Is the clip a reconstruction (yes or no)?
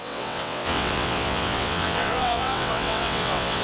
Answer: yes